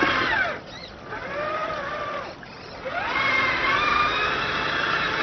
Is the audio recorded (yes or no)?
yes